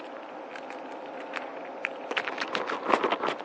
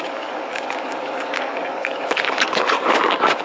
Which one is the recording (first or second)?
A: first